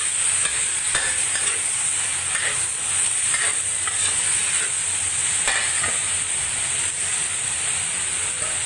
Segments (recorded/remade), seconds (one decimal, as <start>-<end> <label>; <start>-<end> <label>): 0.0-8.7 recorded